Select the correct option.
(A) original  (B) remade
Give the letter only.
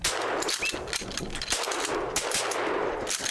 A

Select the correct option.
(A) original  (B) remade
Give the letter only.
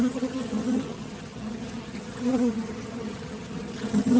B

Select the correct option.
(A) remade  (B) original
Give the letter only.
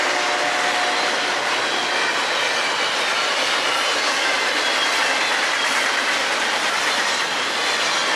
B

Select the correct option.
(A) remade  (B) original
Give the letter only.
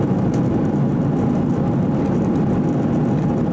B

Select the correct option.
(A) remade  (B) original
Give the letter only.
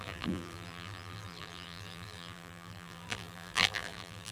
A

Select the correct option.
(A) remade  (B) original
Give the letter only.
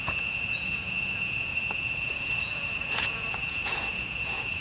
A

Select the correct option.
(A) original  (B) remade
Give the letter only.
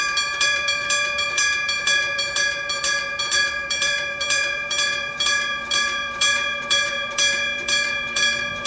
B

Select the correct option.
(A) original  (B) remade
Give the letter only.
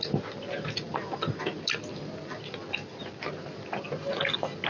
A